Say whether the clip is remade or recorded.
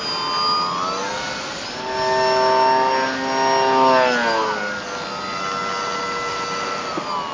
recorded